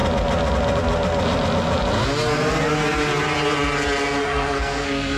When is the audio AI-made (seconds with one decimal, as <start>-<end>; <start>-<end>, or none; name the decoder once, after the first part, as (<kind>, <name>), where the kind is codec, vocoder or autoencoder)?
4.2-5.2 (codec, SNAC)